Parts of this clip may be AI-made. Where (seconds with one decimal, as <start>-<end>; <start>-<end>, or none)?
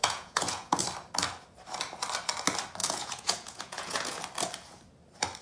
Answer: 0.0-0.8; 2.8-4.2